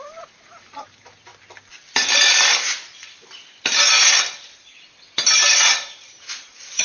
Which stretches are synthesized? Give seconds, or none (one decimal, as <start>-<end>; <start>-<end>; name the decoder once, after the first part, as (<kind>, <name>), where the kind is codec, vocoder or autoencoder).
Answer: 0.0-1.3 (vocoder, BigVGAN v2); 5.4-6.8